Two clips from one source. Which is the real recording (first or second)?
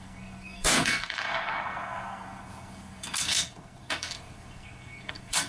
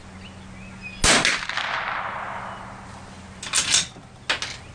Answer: second